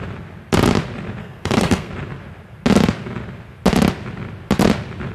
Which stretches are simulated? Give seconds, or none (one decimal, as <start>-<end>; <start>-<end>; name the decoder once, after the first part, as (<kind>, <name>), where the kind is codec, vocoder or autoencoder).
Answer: 1.2-1.9 (codec, SNAC)